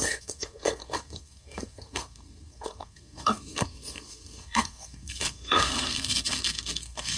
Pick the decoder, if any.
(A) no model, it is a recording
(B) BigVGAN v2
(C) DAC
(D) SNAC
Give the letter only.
D